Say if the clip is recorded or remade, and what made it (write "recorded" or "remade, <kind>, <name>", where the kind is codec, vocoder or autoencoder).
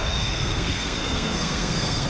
remade, codec, SNAC